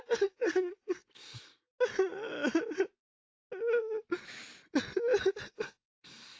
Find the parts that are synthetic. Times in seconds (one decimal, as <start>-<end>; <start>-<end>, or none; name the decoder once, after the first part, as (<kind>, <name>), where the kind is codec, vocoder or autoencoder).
0.0-1.7 (codec, SNAC); 5.5-6.4